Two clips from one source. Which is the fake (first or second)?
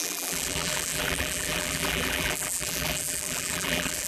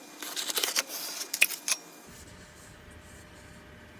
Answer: first